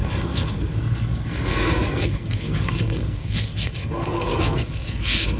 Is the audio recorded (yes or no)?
no